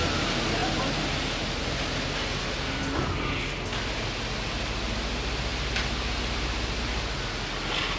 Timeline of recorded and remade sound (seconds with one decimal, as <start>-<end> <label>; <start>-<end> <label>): 0.0-8.0 recorded